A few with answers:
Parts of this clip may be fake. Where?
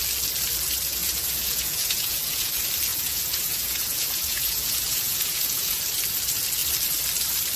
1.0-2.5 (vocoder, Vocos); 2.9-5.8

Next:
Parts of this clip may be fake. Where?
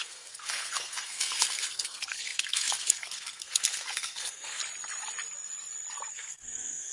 0.0-4.6 (codec, SNAC); 6.1-6.9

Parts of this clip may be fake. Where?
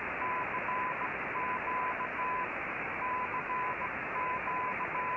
2.1-5.2 (autoencoder, DAC-VAE)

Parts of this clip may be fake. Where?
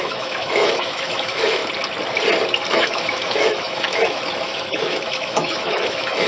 0.0-1.6 (autoencoder, DAC-VAE); 2.7-6.3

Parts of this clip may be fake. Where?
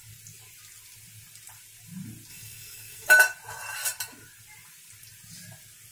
2.3-3.1 (codec, SNAC)